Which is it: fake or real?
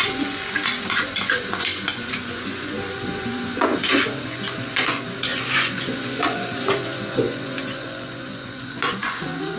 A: fake